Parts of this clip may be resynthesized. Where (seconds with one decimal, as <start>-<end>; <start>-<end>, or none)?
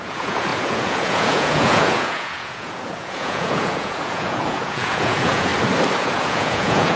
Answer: 0.0-5.5; 6.0-7.0